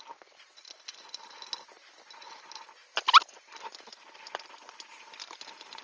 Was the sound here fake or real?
real